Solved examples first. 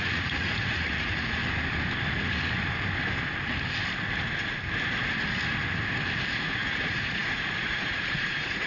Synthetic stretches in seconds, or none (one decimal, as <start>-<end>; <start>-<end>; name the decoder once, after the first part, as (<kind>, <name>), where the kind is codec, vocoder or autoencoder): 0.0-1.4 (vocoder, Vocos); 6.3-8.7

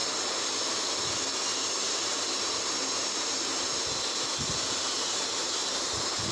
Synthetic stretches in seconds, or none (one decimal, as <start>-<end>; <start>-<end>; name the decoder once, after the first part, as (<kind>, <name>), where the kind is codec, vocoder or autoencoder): none

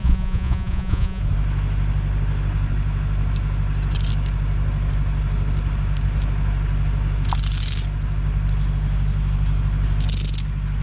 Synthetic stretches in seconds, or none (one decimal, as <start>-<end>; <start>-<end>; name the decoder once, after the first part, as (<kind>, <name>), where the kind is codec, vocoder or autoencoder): 0.0-1.2 (vocoder, Vocos)

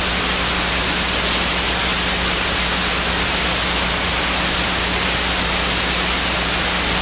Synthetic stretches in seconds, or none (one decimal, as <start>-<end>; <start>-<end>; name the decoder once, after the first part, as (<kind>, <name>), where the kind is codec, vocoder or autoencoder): none